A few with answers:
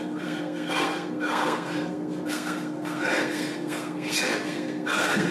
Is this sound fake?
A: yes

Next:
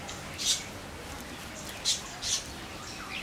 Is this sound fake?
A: no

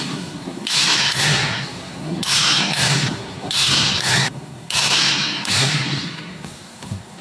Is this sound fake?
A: yes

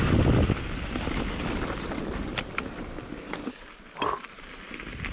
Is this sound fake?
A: no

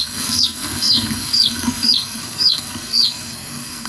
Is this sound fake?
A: yes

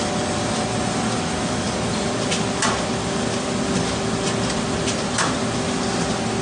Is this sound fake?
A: no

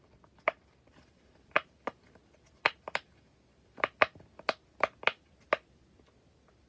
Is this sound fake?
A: no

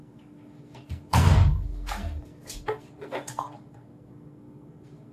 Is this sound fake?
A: yes